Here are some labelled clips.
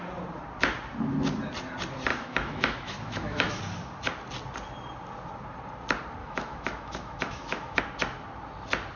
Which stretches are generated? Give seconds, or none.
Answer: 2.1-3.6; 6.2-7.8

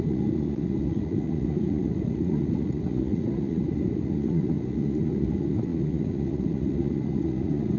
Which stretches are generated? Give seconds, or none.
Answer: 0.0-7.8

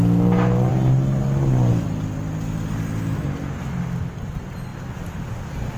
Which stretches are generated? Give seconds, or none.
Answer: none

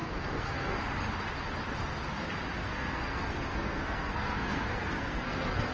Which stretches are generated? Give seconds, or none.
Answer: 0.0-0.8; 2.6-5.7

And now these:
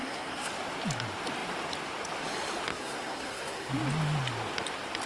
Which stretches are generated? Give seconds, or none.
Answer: 0.0-0.5; 2.7-3.7

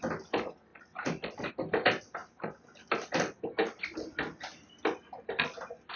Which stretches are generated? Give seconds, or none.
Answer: none

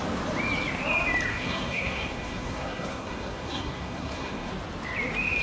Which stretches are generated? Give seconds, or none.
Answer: 1.3-4.5